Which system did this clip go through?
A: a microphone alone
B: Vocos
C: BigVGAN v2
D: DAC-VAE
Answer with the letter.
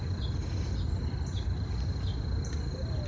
A